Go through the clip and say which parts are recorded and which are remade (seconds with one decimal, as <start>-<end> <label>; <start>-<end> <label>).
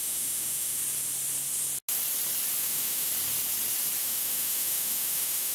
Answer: 0.0-0.8 remade; 0.8-2.6 recorded; 2.6-3.1 remade; 3.1-4.0 recorded; 4.0-5.5 remade